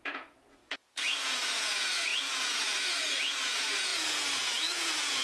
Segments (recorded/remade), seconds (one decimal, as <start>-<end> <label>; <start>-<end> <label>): 0.0-5.2 remade